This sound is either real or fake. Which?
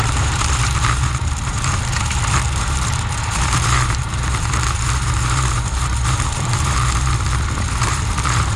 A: fake